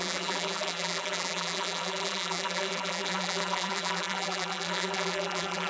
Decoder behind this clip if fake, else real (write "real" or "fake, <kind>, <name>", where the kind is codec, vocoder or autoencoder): fake, vocoder, BigVGAN v2